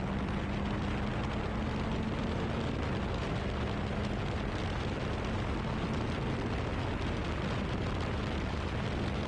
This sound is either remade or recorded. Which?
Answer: recorded